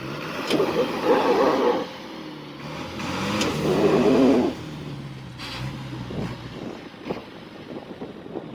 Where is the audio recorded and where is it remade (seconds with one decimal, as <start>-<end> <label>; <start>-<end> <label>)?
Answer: 0.0-8.5 recorded